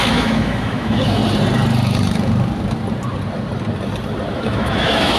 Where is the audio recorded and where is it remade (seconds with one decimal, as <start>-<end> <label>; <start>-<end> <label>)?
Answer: 0.0-1.2 remade; 1.2-4.3 recorded; 4.3-5.2 remade